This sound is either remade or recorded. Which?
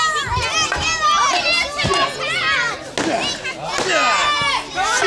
recorded